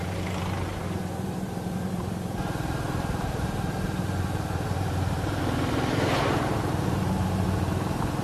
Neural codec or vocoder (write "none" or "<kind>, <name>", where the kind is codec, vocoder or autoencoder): vocoder, BigVGAN v2